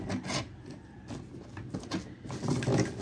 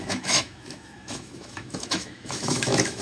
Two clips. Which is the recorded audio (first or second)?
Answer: first